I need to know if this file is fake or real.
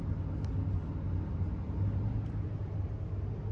real